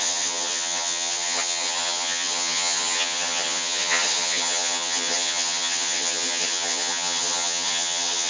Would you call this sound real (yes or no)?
no